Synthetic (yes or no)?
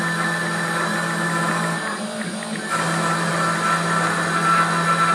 no